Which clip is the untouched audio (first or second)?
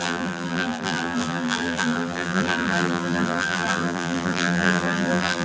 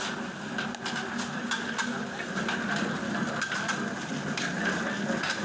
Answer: second